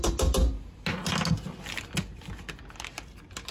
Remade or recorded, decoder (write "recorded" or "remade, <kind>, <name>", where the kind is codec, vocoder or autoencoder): recorded